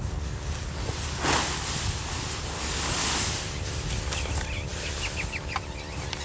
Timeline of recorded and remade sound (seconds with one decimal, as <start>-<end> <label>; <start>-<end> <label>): 0.0-6.2 recorded